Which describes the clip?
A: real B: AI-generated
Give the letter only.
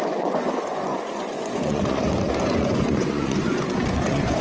B